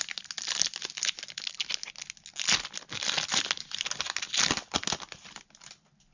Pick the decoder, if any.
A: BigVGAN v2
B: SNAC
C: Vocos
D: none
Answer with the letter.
D